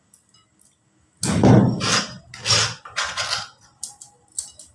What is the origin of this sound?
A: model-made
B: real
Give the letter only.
B